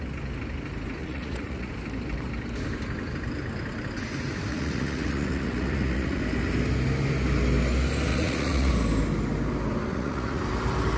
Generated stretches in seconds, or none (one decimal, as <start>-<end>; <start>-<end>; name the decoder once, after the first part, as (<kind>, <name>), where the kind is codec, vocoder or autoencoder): 1.0-1.7 (vocoder, Vocos); 4.5-6.2; 8.1-8.7; 9.9-10.4